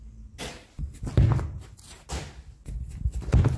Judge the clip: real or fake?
real